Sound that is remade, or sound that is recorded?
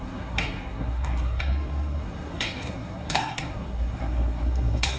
remade